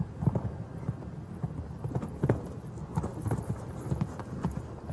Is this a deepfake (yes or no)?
no